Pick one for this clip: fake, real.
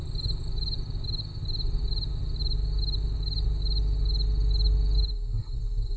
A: real